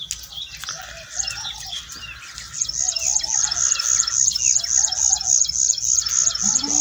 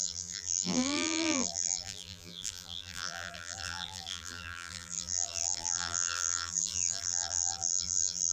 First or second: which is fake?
second